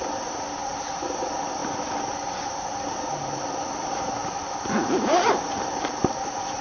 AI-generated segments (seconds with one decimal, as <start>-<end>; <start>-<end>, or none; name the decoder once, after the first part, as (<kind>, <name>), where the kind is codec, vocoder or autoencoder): none